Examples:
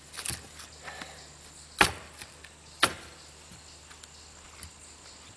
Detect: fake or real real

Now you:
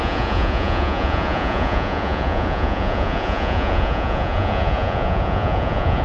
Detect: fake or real fake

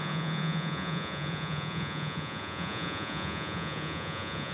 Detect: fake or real fake